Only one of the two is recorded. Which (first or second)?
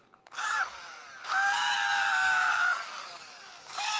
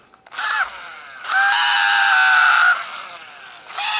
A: second